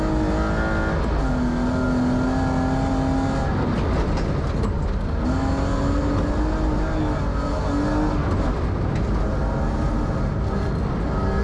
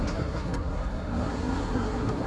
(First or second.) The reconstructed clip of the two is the second